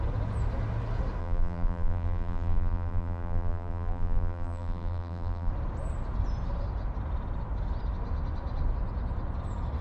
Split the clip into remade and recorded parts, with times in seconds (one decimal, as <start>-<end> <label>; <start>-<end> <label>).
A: 0.0-1.2 recorded; 1.2-5.5 remade; 5.5-9.8 recorded